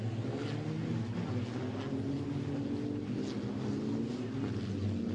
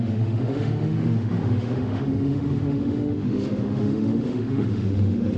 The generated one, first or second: second